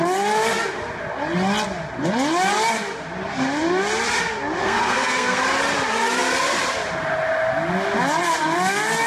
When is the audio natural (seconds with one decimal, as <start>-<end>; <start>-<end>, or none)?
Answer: 0.0-4.6; 5.4-9.1